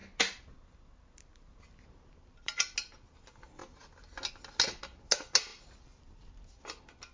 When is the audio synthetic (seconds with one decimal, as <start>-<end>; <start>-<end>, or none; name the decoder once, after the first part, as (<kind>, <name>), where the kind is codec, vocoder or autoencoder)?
none